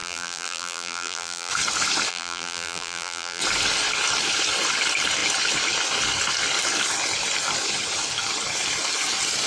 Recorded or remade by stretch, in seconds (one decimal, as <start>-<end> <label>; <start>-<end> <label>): 0.0-1.5 remade; 1.5-2.1 recorded; 2.1-3.4 remade; 3.4-9.5 recorded